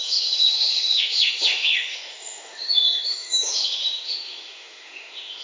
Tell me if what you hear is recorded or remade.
remade